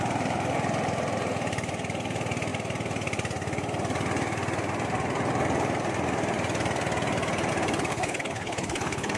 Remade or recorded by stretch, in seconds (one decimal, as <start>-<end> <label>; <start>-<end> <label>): 0.0-7.9 recorded; 7.9-9.2 remade